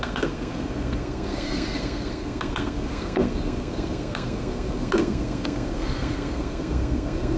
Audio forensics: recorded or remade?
remade